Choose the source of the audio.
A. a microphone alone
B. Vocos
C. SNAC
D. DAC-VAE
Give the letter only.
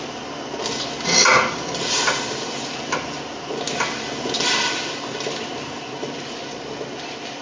A